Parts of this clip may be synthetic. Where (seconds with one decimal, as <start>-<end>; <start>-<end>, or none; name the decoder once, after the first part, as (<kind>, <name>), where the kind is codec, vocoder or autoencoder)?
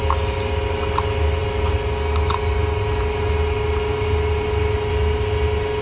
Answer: none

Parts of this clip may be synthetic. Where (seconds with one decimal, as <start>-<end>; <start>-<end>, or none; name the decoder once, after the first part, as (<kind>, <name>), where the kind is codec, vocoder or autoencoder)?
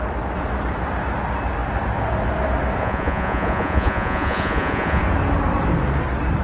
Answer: 2.8-5.0 (vocoder, Vocos)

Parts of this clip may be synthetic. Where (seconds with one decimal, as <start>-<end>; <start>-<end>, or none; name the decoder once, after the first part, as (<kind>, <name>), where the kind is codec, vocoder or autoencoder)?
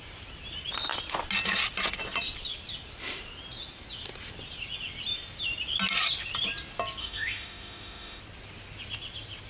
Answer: 7.0-8.2 (autoencoder, DAC-VAE)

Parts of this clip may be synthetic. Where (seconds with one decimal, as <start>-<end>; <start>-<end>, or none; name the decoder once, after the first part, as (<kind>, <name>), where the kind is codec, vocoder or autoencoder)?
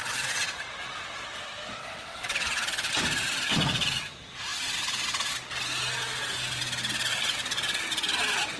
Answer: 0.0-0.6 (vocoder, WaveNeXt); 1.8-2.9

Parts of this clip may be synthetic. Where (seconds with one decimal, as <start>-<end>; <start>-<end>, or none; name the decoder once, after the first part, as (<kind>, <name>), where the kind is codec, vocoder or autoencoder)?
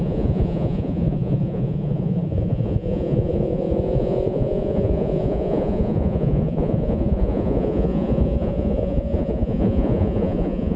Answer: 0.0-10.8 (vocoder, Vocos)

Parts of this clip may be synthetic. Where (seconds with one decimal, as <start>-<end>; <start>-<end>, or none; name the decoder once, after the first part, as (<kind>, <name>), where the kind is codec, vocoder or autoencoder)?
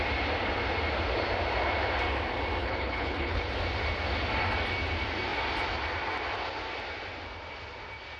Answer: 2.6-3.5 (codec, HILCodec)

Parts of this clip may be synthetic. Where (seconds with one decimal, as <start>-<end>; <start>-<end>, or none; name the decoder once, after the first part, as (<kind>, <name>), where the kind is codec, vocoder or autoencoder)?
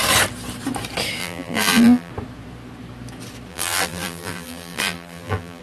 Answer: 1.2-2.1 (vocoder, BigVGAN v2); 3.5-5.6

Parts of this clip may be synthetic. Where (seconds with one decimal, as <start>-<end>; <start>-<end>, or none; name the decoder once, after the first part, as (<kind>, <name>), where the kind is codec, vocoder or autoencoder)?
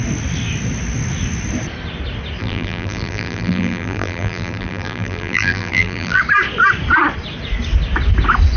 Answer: 2.4-6.2 (vocoder, BigVGAN v2)